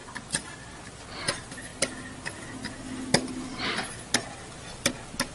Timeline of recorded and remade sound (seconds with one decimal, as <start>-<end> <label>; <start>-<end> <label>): 0.0-0.7 remade; 0.7-5.3 recorded

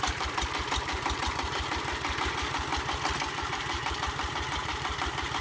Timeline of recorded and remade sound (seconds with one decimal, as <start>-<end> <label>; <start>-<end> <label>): 0.0-2.7 remade; 2.7-3.5 recorded; 3.5-5.4 remade

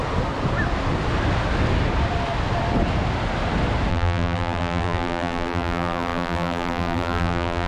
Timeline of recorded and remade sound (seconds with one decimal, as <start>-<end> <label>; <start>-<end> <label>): 0.0-3.9 recorded; 3.9-7.7 remade

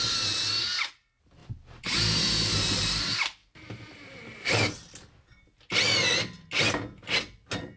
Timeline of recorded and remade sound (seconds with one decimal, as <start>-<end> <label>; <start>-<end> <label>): 0.0-1.4 recorded; 1.4-2.3 remade; 2.3-3.4 recorded; 3.4-4.7 remade; 4.7-7.8 recorded

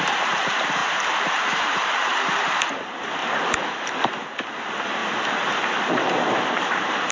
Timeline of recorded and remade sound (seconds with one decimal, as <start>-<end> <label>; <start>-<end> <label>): 0.0-5.0 remade; 5.0-5.8 recorded; 5.8-7.1 remade

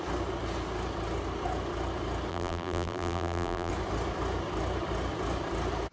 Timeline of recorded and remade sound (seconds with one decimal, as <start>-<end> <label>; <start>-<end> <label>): 0.0-2.3 recorded; 2.3-3.7 remade; 3.7-5.9 recorded

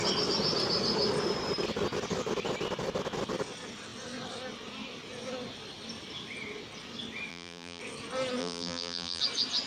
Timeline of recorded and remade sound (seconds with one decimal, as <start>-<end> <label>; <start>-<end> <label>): 0.0-7.3 recorded; 7.3-7.8 remade; 7.8-8.4 recorded; 8.4-9.2 remade; 9.2-9.7 recorded